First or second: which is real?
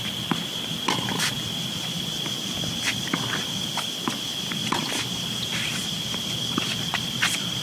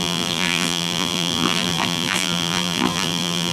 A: first